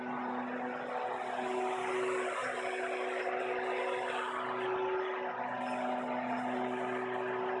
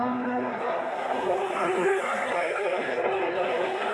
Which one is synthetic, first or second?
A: second